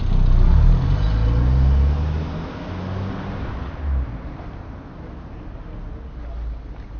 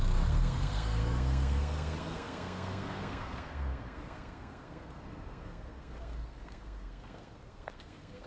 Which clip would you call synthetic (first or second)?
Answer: second